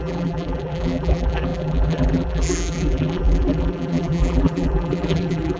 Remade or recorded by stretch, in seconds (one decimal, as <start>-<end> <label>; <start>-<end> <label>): 0.0-5.6 remade

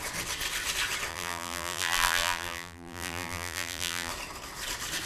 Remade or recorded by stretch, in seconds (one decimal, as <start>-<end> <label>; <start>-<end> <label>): 0.0-1.1 recorded; 1.1-4.1 remade; 4.1-5.1 recorded

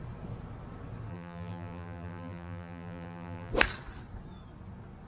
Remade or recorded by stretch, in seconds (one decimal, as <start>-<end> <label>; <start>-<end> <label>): 0.0-1.1 recorded; 1.1-3.5 remade; 3.5-5.1 recorded

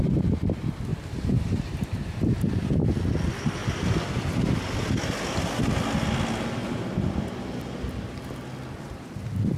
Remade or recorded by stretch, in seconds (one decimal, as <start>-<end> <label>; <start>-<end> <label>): 0.0-0.9 recorded; 0.9-2.4 remade; 2.4-9.6 recorded